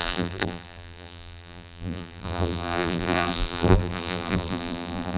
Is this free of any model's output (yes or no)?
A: no